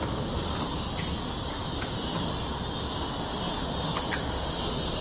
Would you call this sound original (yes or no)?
yes